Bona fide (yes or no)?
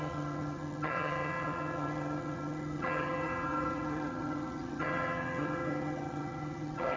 no